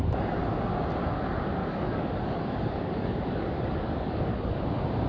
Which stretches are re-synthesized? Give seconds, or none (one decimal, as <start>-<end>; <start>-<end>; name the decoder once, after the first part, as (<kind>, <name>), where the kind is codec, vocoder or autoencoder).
1.6-4.6 (codec, DAC)